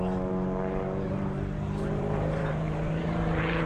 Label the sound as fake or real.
fake